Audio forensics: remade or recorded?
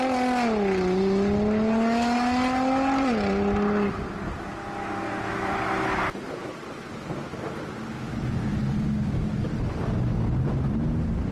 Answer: recorded